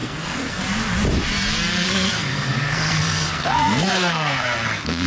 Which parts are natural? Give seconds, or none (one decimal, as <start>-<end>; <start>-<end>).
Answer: 0.6-1.7